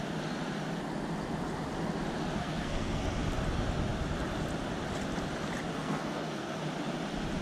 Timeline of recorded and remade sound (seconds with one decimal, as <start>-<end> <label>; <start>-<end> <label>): 0.0-2.4 recorded; 2.4-3.0 remade; 3.0-5.7 recorded; 5.7-6.6 remade; 6.6-7.4 recorded